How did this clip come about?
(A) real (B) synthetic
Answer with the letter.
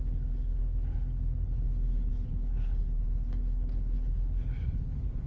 B